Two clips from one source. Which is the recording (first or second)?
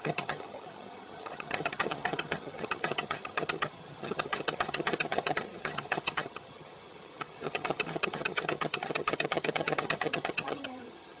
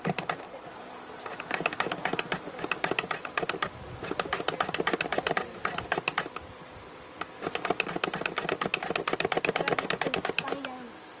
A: second